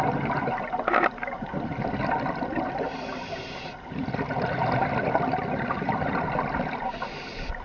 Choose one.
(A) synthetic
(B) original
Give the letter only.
B